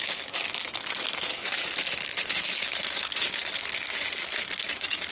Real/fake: fake